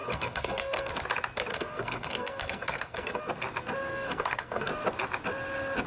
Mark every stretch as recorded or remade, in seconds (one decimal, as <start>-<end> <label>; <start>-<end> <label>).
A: 0.0-0.9 remade; 0.9-1.5 recorded; 1.5-3.2 remade; 3.2-3.9 recorded; 3.9-4.7 remade; 4.7-5.9 recorded

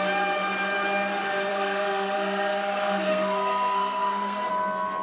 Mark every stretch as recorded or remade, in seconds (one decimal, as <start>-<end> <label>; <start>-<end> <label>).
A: 0.0-1.5 recorded; 1.5-4.5 remade; 4.5-5.0 recorded